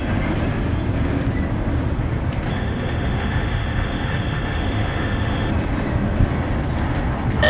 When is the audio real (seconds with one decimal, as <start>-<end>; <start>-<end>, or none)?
0.0-2.5; 5.5-7.5